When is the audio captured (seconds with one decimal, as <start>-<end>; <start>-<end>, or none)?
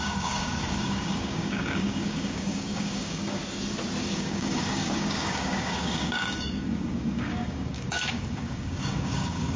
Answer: 3.4-4.0